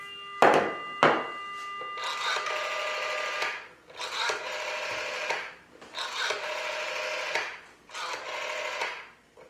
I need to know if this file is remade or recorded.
recorded